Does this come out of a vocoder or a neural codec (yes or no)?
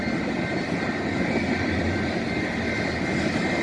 no